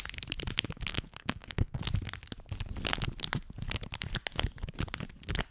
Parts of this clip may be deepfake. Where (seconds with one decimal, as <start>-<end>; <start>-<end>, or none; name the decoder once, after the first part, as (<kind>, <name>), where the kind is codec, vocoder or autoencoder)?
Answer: 0.9-1.8 (codec, SNAC)